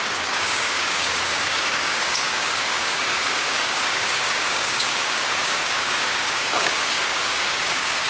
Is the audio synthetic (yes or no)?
yes